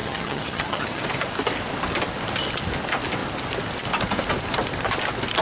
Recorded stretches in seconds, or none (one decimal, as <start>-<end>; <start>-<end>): 1.0-5.4